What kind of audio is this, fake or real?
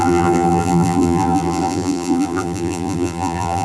fake